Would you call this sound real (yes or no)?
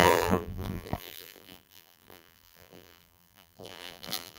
no